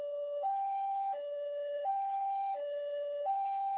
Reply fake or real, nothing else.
fake